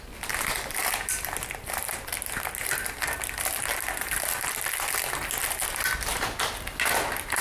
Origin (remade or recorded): recorded